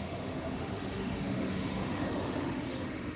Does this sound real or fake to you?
fake